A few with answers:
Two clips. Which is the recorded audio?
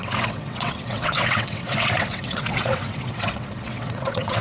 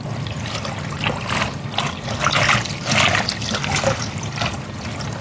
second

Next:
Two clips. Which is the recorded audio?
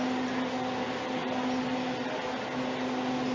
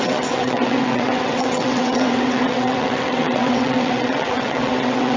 first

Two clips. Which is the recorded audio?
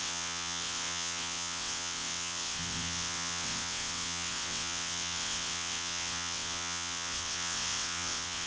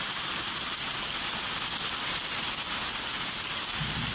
second